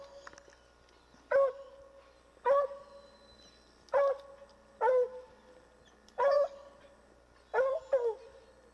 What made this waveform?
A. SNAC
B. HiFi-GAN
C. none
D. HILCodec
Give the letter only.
C